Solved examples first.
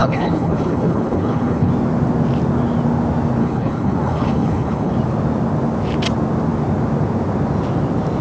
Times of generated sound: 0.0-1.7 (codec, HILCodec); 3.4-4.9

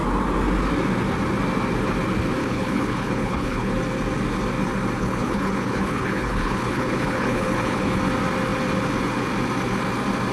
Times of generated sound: 2.4-3.7 (codec, HILCodec); 5.0-8.0

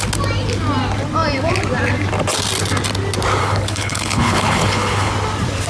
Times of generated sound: 3.4-5.1 (codec, HILCodec)

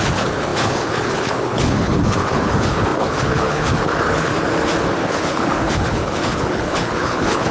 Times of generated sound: 0.0-4.3 (codec, HILCodec); 5.0-7.5

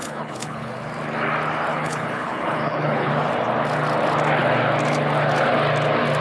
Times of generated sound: 0.0-0.7 (codec, HILCodec); 1.7-3.1

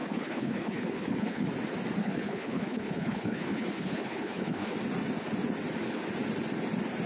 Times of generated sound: 0.0-1.5 (codec, HILCodec); 2.0-4.7